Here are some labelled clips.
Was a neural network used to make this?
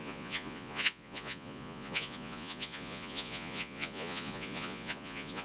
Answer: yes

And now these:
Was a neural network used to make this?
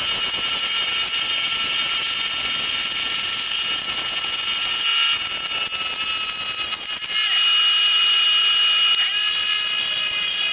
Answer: no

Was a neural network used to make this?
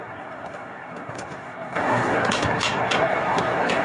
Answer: yes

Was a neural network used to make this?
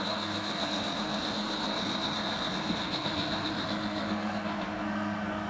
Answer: yes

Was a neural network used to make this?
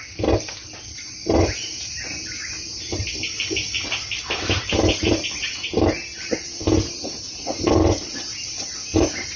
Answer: no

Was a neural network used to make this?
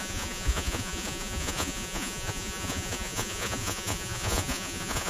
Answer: yes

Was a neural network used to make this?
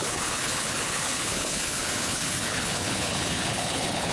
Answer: yes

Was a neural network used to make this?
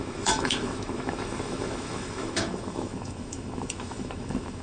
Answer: yes